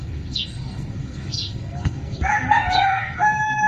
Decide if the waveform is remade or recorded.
remade